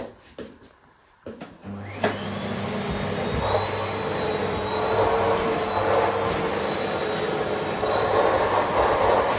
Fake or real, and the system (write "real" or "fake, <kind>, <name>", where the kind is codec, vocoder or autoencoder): real